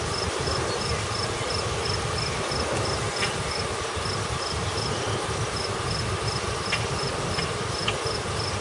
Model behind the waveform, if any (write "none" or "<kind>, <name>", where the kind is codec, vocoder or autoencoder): none